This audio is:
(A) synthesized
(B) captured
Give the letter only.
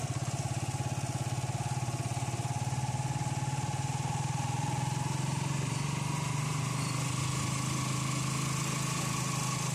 B